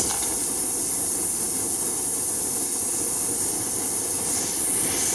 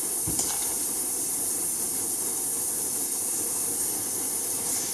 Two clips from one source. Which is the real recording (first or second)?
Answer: second